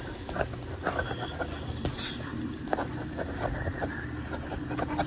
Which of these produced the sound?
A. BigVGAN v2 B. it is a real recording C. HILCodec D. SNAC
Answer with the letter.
B